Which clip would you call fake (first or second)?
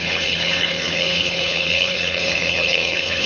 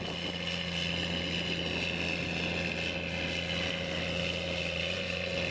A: first